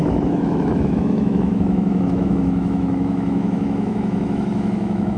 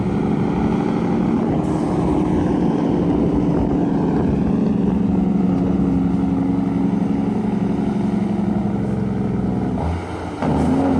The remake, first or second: first